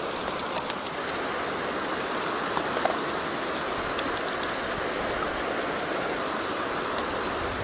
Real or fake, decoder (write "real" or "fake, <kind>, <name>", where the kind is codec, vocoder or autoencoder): real